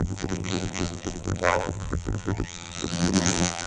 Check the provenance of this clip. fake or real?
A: fake